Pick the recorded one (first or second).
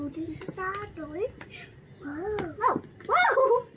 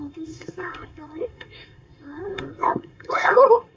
first